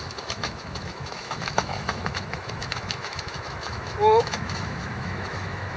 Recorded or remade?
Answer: remade